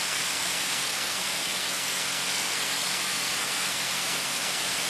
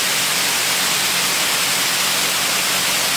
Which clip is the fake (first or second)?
first